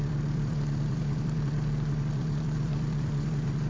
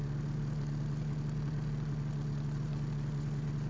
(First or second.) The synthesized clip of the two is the first